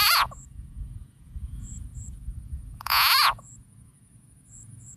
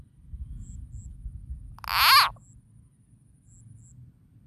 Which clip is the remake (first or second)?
first